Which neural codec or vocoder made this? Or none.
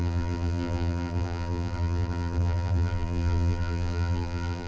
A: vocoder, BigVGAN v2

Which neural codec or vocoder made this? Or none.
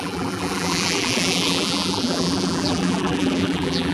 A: vocoder, BigVGAN v2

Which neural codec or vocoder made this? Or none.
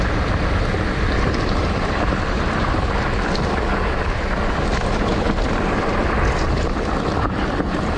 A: vocoder, BigVGAN v2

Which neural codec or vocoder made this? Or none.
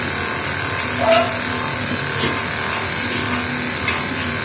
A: none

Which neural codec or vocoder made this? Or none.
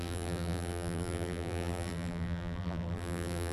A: vocoder, BigVGAN v2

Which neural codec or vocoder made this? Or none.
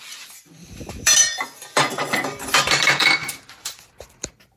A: vocoder, BigVGAN v2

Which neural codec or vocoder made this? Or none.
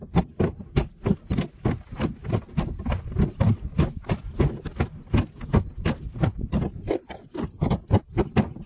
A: none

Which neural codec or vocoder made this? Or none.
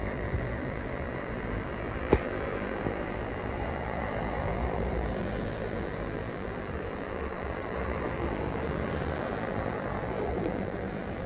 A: vocoder, BigVGAN v2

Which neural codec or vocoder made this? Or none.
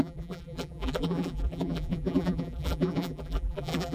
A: vocoder, BigVGAN v2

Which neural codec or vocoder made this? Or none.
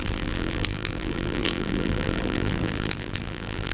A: vocoder, BigVGAN v2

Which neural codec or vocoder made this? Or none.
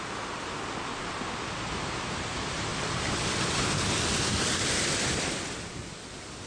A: none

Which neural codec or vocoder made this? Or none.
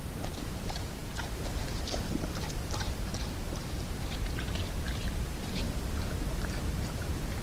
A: vocoder, BigVGAN v2